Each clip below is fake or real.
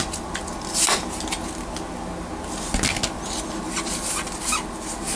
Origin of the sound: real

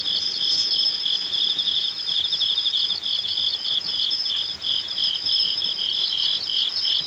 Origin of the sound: fake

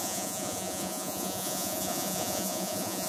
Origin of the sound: fake